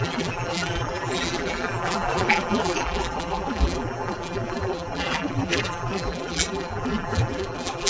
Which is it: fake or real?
fake